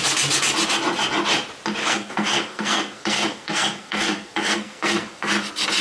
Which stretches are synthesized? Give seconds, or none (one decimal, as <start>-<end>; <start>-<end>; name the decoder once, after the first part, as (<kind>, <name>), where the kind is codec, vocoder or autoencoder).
1.8-5.3 (codec, SNAC)

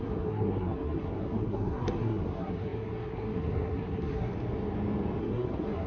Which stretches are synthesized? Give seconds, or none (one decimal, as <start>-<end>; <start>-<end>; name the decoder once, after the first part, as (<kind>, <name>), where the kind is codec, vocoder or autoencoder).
0.0-4.3 (codec, SNAC); 5.2-5.9

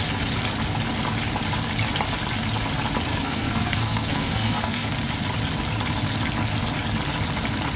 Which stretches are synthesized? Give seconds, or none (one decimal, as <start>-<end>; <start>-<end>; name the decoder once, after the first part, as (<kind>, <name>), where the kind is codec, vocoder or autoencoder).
3.1-4.9 (codec, SNAC)

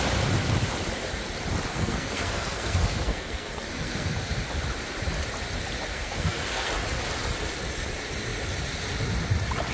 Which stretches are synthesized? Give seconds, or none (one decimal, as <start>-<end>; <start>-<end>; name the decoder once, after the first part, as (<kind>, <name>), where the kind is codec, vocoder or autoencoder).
1.7-4.1 (codec, SNAC); 5.9-6.7

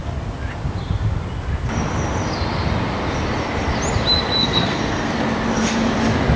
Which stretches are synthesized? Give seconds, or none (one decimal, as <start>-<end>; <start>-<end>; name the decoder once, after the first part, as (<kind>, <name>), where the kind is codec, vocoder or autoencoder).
4.4-5.1 (codec, SNAC)

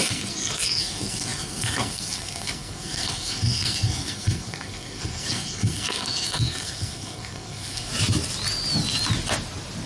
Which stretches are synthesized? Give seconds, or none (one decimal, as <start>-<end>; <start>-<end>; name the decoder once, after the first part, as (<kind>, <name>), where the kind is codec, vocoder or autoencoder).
0.0-7.9 (codec, SNAC)